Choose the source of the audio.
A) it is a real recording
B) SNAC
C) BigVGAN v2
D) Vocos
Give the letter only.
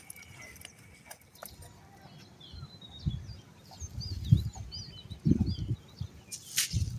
A